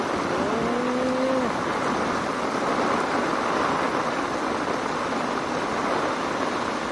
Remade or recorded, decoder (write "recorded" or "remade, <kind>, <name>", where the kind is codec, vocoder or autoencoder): recorded